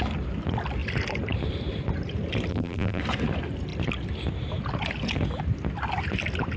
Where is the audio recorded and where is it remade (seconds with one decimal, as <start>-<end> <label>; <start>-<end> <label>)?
0.0-2.5 recorded; 2.5-3.0 remade; 3.0-6.6 recorded